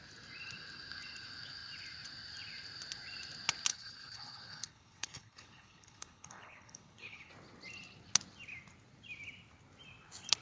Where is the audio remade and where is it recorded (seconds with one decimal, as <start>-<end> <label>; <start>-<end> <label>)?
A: 0.0-3.7 recorded; 3.7-7.3 remade; 7.3-10.4 recorded

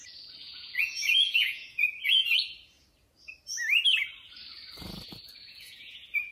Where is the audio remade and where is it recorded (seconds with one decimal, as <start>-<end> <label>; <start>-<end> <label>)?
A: 0.0-0.4 recorded; 0.4-2.4 remade; 2.4-5.4 recorded; 5.4-6.3 remade

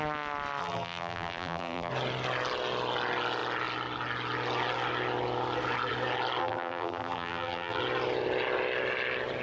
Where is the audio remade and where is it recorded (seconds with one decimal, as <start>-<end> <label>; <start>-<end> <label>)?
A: 0.0-0.6 recorded; 0.6-1.9 remade; 1.9-6.4 recorded; 6.4-7.8 remade; 7.8-9.4 recorded

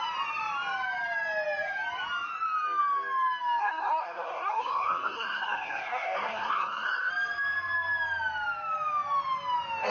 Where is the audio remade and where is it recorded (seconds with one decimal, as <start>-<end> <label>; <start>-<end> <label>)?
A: 0.0-3.6 recorded; 3.6-7.1 remade; 7.1-9.9 recorded

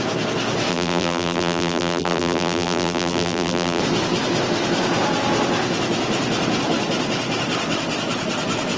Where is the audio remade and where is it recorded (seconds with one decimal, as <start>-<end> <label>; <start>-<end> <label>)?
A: 0.0-0.7 recorded; 0.7-3.8 remade; 3.8-8.8 recorded

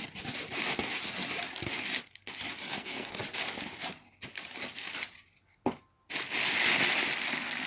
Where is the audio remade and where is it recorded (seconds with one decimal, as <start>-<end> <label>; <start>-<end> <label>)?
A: 0.0-2.7 recorded; 2.7-3.2 remade; 3.2-7.7 recorded

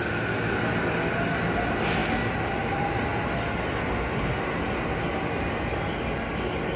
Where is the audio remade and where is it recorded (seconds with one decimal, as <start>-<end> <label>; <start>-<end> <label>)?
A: 0.0-6.8 recorded

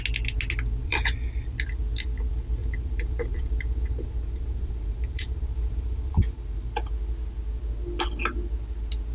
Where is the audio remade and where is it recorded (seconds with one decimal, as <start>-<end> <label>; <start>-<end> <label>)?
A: 0.0-0.8 recorded; 0.8-1.4 remade; 1.4-2.6 recorded; 2.6-6.7 remade; 6.7-9.1 recorded